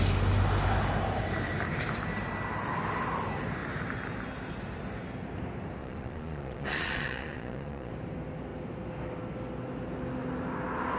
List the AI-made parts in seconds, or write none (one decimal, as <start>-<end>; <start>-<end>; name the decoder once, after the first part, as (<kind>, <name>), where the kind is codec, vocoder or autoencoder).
5.8-7.9 (vocoder, Vocos)